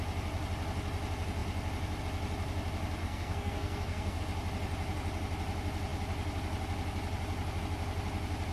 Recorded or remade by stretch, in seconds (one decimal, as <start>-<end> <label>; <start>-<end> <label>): 0.0-3.0 recorded; 3.0-4.2 remade; 4.2-8.5 recorded